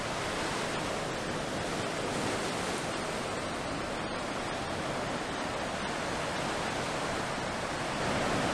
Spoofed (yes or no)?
no